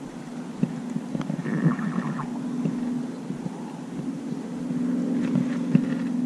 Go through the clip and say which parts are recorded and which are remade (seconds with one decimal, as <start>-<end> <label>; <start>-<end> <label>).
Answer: 0.0-6.3 recorded